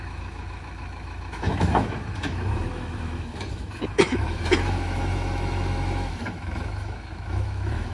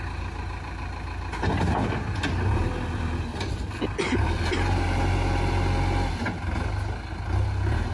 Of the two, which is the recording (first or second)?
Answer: second